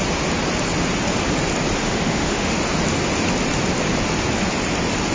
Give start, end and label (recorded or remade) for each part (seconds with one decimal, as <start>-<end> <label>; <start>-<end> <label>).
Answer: 0.0-1.8 recorded; 1.8-2.6 remade; 2.6-5.1 recorded